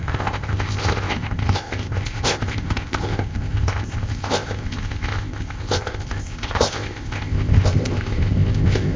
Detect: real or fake fake